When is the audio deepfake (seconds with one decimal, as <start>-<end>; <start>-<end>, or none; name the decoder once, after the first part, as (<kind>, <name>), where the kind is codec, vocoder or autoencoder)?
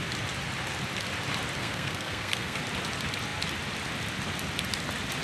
1.6-2.6 (codec, SNAC)